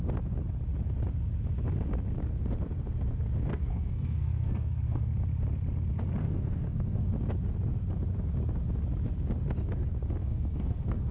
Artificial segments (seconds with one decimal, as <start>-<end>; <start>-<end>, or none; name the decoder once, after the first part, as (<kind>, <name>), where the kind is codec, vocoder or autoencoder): 3.5-5.1 (codec, SNAC); 6.2-7.1; 10.2-11.1